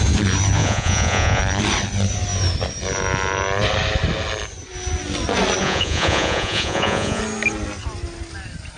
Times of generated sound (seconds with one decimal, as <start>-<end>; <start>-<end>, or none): 0.6-1.4; 5.6-7.2